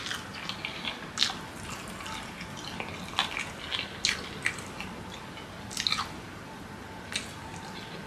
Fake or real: real